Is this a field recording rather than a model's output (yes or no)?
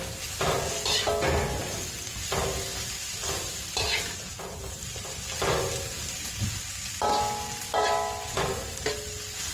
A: yes